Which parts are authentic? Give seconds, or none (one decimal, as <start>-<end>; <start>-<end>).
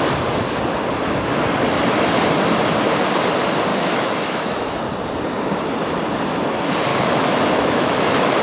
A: 0.0-3.7; 4.8-6.9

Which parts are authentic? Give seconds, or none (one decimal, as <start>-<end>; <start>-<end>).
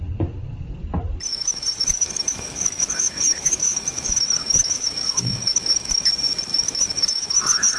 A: 0.0-1.3; 6.0-6.5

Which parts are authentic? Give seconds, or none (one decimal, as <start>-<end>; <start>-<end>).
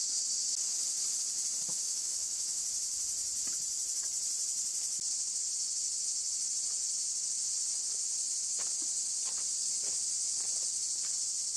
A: 0.0-1.7; 2.6-11.6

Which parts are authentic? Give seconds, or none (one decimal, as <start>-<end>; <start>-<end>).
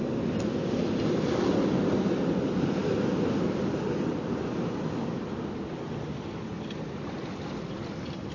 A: 0.0-8.3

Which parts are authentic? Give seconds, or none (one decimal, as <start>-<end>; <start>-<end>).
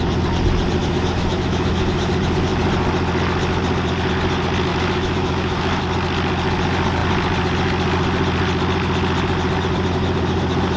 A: 0.0-0.8; 2.1-4.7; 5.8-10.8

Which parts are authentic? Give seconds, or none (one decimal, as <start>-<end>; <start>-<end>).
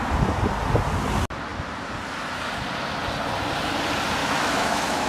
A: 0.0-4.2